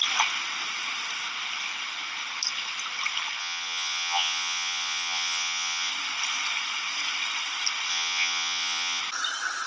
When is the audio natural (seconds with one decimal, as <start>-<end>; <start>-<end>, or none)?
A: 0.0-3.4; 5.9-7.9; 9.0-9.7